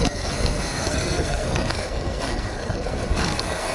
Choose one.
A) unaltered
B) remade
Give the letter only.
B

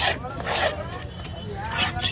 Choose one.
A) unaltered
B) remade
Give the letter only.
A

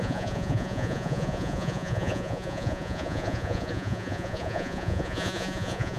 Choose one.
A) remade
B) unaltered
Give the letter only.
A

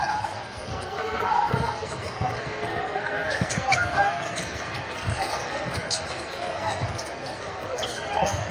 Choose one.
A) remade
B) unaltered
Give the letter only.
A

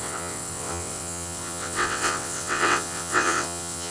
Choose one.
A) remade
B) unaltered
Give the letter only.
A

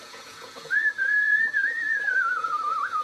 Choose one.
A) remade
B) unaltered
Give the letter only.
A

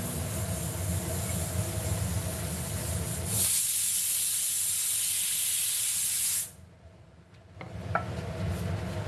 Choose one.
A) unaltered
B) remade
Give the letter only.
A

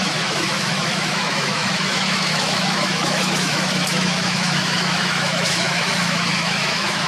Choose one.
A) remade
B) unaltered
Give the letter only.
A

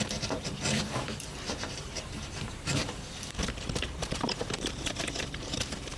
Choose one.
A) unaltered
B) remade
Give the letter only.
B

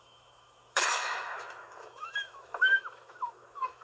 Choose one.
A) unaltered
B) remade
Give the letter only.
B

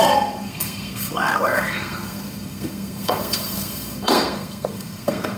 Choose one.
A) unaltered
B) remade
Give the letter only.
B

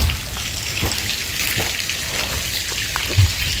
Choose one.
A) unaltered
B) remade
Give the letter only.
A